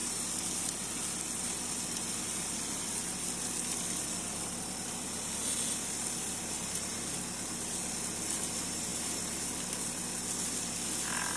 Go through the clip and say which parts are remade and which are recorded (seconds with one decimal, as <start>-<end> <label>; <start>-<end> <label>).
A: 0.0-11.4 recorded